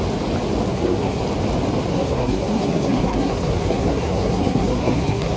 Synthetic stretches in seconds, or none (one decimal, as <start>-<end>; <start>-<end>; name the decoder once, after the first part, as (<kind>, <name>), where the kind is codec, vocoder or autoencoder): 0.7-1.2 (codec, SNAC); 1.9-5.4